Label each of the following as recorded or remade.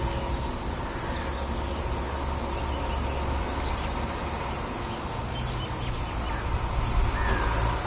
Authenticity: recorded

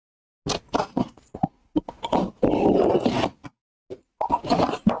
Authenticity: recorded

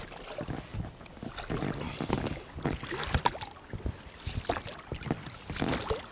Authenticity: recorded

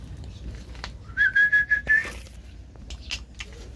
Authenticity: recorded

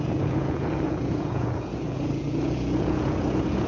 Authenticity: remade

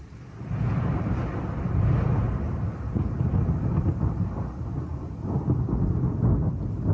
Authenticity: recorded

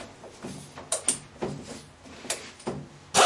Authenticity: recorded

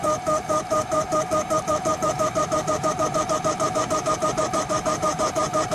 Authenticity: remade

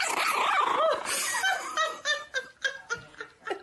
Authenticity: recorded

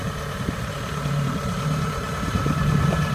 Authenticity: remade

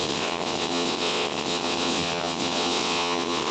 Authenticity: remade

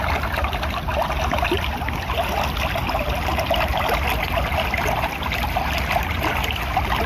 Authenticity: recorded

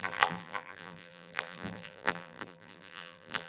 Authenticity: remade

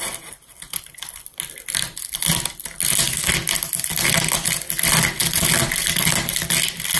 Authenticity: recorded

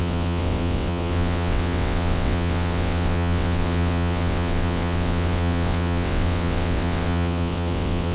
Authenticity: remade